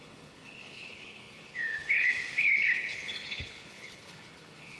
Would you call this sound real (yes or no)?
no